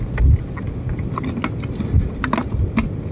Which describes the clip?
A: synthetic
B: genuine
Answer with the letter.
B